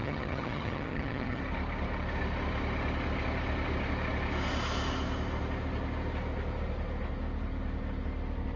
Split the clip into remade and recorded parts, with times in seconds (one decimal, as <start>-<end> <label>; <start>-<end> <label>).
0.0-1.4 remade; 1.4-8.6 recorded

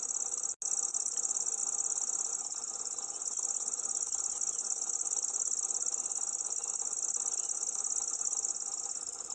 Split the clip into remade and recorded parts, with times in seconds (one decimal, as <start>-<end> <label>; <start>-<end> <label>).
0.0-9.3 recorded

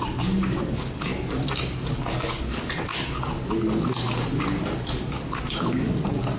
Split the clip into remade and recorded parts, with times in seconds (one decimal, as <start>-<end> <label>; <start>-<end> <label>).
0.0-1.1 remade; 1.1-1.9 recorded; 1.9-2.9 remade; 2.9-4.4 recorded; 4.4-6.4 remade

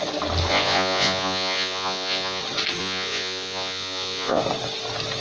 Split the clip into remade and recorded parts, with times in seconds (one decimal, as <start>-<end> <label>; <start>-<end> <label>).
0.0-0.5 recorded; 0.5-2.4 remade; 2.4-2.8 recorded; 2.8-4.4 remade; 4.4-5.2 recorded